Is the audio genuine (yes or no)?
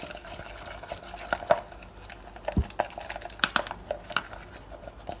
yes